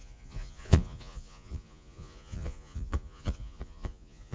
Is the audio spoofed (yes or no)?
yes